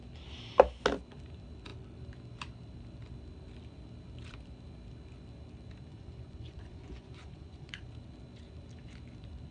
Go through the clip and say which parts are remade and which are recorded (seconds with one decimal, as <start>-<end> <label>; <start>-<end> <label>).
0.0-5.9 recorded; 5.9-7.9 remade; 7.9-9.5 recorded